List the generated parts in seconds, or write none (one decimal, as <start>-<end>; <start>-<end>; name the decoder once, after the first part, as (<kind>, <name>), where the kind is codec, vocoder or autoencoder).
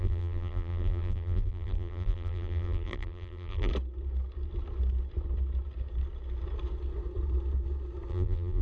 0.0-3.7 (vocoder, BigVGAN v2); 8.1-8.6